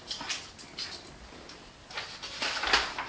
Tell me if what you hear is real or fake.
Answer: real